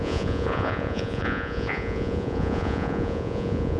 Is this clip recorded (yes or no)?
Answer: no